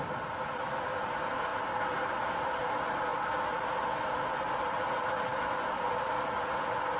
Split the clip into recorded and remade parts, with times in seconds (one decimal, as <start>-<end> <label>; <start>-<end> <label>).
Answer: 0.0-7.0 recorded